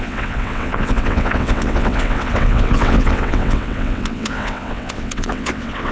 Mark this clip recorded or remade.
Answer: remade